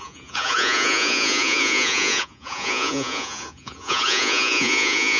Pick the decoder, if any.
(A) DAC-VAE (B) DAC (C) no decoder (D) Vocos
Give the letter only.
D